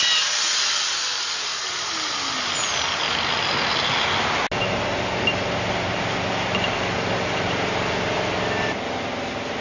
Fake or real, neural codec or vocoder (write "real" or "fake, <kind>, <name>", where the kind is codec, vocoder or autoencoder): real